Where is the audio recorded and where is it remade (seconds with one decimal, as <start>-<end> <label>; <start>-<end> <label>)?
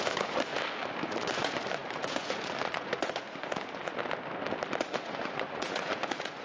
0.0-0.5 remade; 0.5-1.0 recorded; 1.0-4.0 remade; 4.0-4.8 recorded; 4.8-6.4 remade